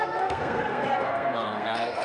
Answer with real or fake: fake